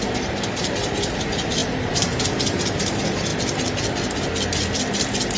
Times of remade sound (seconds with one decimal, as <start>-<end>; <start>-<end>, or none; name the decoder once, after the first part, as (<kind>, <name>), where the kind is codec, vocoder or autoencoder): 0.0-3.3 (vocoder, BigVGAN v2)